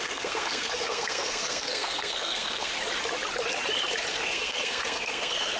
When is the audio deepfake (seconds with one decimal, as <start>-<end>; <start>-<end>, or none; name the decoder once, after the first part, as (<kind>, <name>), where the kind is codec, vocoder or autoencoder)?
0.0-2.7 (codec, SNAC); 4.1-5.6